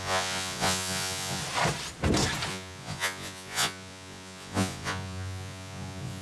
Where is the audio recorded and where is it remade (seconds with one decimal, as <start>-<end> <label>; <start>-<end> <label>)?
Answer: 0.0-1.4 remade; 1.4-2.5 recorded; 2.5-6.2 remade